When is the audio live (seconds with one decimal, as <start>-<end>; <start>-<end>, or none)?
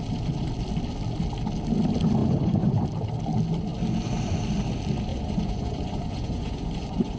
0.0-2.2; 2.7-5.1